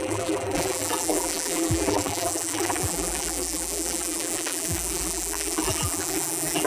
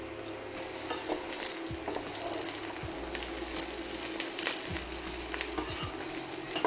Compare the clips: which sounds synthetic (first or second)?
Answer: first